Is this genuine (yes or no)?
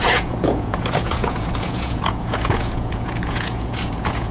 no